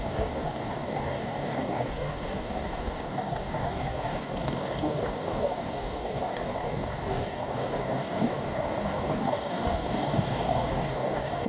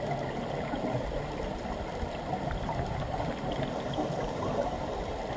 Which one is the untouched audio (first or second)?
second